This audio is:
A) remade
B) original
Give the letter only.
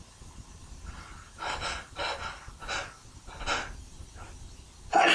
B